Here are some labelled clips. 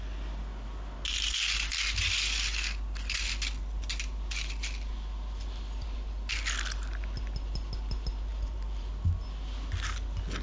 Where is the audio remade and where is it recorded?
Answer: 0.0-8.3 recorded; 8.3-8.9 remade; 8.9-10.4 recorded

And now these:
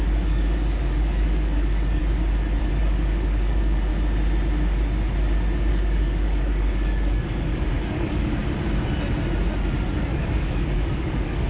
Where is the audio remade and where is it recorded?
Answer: 0.0-2.0 remade; 2.0-2.6 recorded; 2.6-3.9 remade; 3.9-5.7 recorded; 5.7-8.4 remade; 8.4-10.0 recorded; 10.0-11.5 remade